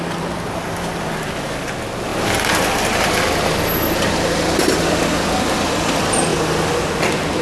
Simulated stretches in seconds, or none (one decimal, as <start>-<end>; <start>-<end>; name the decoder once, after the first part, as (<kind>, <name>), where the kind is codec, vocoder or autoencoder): none